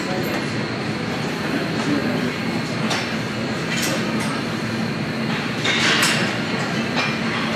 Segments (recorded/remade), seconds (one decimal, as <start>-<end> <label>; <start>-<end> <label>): 0.0-7.6 recorded